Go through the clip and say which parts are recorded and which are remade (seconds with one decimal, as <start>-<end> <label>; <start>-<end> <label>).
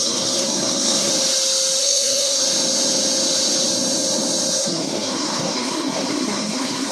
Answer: 0.0-1.1 remade; 1.1-1.8 recorded; 1.8-2.4 remade; 2.4-4.6 recorded; 4.6-6.9 remade